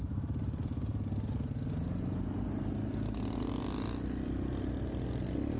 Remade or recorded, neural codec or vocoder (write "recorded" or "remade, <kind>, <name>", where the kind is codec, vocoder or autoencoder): recorded